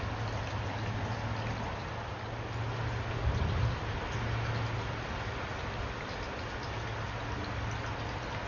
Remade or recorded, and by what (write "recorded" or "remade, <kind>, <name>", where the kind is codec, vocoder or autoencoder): recorded